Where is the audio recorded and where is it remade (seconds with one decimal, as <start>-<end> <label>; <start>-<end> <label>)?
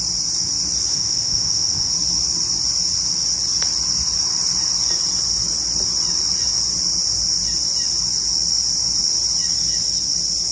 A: 0.0-0.9 recorded; 0.9-1.9 remade; 1.9-10.5 recorded